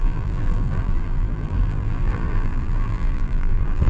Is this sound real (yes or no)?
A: no